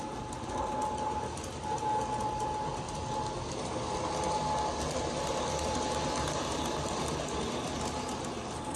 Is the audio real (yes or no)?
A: yes